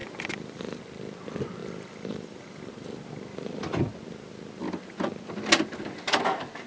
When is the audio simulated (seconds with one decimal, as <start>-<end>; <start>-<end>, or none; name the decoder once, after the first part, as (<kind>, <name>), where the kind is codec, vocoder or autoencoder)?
0.0-0.8 (vocoder, BigVGAN v2); 1.6-2.7